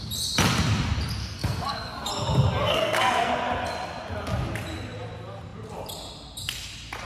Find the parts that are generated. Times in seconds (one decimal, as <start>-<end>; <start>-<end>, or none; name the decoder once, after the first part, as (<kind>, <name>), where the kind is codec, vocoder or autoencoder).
1.2-2.1 (codec, SNAC); 2.6-3.3